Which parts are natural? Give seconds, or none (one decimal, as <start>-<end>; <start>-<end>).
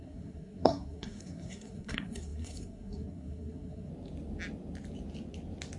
3.9-5.8